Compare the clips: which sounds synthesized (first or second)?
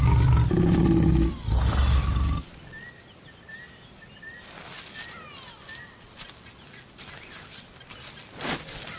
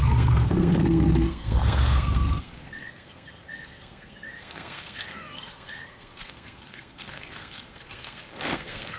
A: second